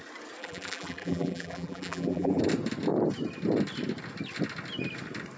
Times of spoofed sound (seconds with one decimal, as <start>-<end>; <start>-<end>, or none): 0.4-2.4